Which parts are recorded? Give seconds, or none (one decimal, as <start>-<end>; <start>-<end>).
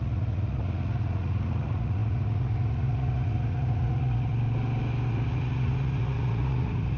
4.3-5.1